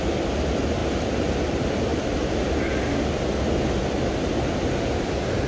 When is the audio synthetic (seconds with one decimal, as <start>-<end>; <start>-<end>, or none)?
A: none